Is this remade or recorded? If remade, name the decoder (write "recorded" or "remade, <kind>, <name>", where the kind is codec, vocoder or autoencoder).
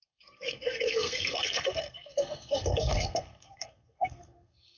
remade, codec, SNAC